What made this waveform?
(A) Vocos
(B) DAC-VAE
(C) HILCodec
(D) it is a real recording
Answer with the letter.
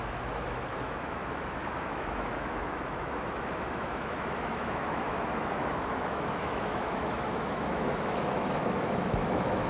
B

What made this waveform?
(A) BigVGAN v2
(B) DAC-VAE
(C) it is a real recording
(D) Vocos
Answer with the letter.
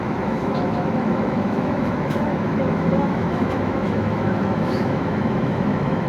B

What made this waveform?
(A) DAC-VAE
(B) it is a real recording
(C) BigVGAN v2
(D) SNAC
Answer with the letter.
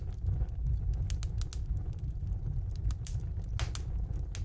B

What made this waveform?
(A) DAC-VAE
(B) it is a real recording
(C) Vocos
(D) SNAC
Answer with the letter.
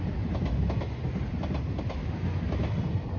B